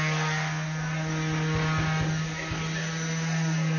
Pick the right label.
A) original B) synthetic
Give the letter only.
A